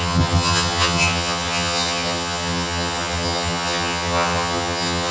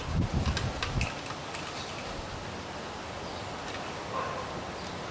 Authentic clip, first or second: second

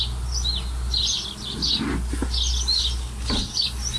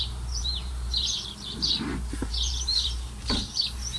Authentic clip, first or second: first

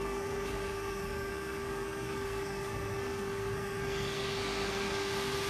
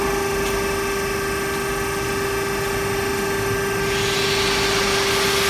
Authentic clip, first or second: second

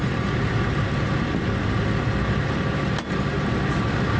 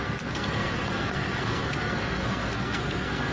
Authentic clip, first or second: first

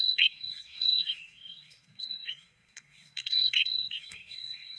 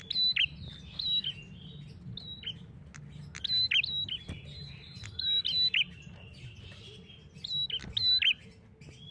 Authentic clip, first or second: second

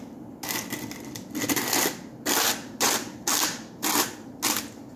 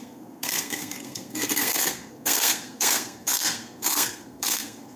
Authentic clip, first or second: first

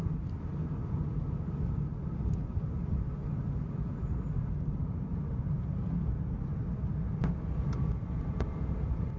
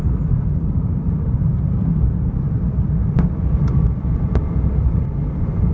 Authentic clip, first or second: first